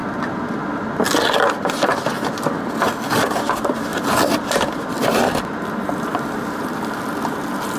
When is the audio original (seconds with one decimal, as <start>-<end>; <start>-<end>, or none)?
0.0-3.1